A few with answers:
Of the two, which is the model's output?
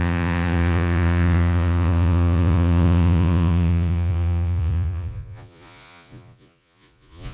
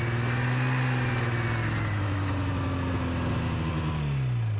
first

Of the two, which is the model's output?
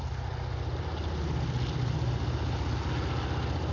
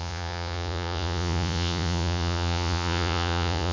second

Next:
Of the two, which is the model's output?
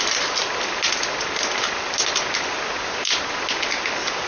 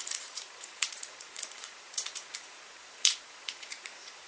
second